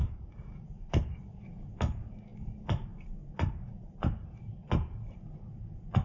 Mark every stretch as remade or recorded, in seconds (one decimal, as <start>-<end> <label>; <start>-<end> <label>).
0.0-0.8 remade; 0.8-6.0 recorded